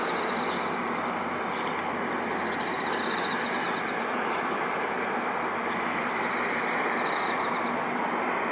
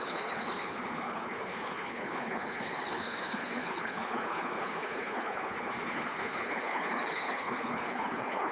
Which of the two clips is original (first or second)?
first